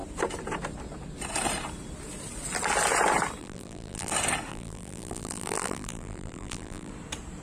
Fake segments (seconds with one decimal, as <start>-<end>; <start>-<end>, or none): 3.4-4.1; 4.5-6.9